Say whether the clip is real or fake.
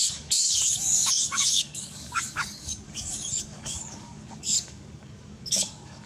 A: fake